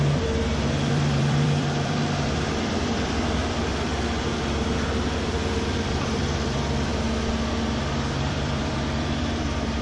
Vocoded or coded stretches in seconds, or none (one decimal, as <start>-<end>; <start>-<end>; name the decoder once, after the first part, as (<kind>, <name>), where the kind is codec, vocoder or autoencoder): 0.0-3.7 (vocoder, BigVGAN v2); 5.9-6.9; 8.2-9.8